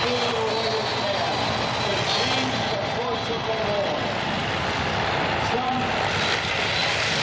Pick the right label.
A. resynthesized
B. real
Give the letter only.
B